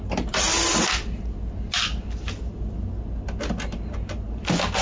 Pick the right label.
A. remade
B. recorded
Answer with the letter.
B